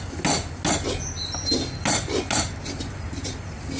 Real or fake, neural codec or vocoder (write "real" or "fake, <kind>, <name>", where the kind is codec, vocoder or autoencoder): real